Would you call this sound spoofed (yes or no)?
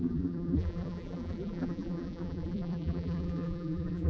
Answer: yes